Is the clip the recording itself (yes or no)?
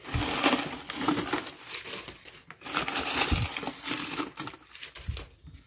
yes